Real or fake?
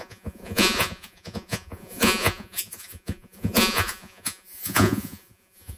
fake